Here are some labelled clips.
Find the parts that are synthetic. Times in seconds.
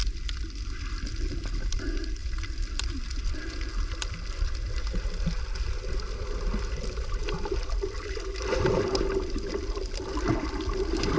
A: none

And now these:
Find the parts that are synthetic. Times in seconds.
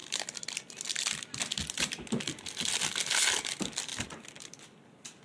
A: none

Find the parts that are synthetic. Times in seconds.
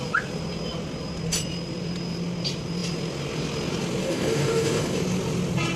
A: 4.0-5.0 (codec, DAC)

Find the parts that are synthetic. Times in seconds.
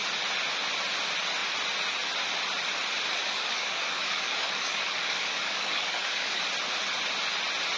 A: 3.2-6.4 (codec, DAC)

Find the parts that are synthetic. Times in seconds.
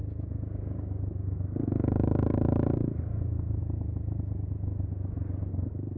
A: 0.0-3.6 (codec, DAC); 5.5-6.0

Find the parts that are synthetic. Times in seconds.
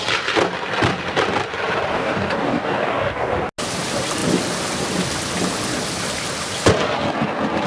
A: 1.9-3.3 (codec, DAC)